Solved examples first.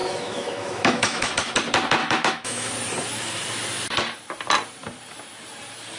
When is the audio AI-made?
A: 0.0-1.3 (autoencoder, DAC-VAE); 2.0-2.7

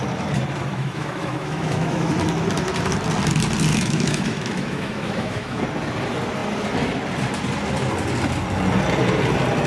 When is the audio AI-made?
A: 0.7-2.1 (autoencoder, DAC-VAE); 3.7-5.6

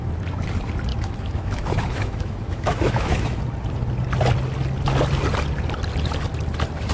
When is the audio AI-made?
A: 0.9-3.4 (autoencoder, DAC-VAE)

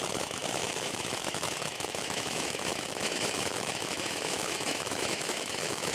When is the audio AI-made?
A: 0.0-5.9 (autoencoder, DAC-VAE)

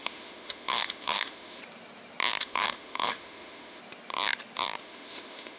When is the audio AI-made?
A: 0.0-1.6 (autoencoder, DAC-VAE); 2.4-3.8; 4.8-5.6

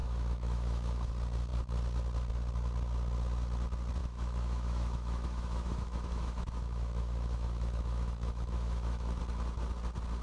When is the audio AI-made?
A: 0.0-1.1 (autoencoder, DAC-VAE); 4.0-9.2

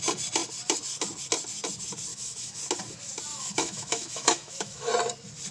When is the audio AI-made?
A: 2.1-2.6 (autoencoder, DAC-VAE); 3.3-4.9

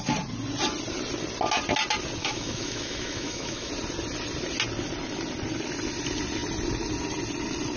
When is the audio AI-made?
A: 2.2-3.7 (autoencoder, DAC-VAE)